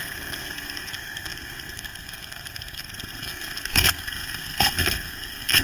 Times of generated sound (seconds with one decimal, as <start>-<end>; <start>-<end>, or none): 0.0-5.6